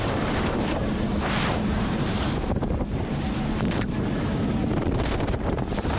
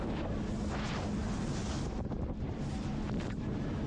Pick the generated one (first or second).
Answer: first